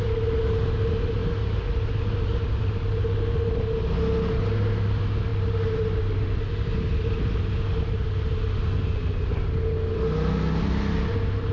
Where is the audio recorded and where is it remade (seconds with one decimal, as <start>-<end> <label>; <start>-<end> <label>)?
0.0-11.5 recorded